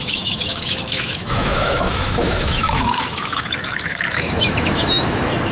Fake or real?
fake